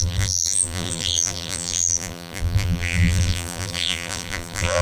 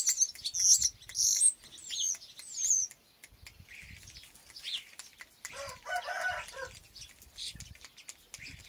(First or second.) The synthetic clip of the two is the first